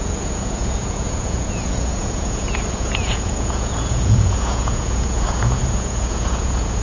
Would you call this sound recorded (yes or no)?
no